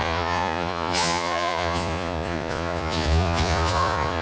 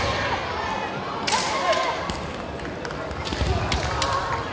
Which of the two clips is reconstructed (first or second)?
first